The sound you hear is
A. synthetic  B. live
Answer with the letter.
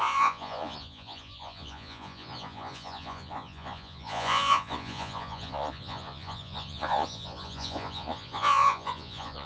A